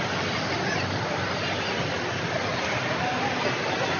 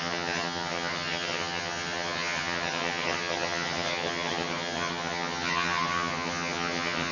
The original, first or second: first